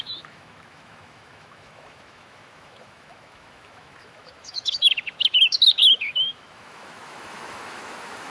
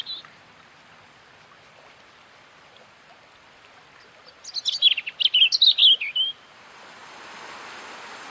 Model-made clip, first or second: first